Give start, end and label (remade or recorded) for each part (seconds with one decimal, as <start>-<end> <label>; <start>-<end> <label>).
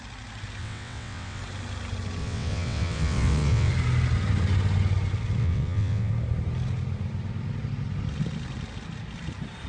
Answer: 0.0-0.6 recorded; 0.6-1.4 remade; 1.4-2.2 recorded; 2.2-3.7 remade; 3.7-5.4 recorded; 5.4-6.1 remade; 6.1-9.7 recorded